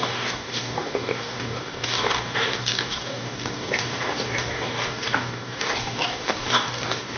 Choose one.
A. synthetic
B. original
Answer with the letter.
A